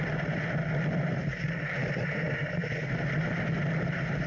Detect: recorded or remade recorded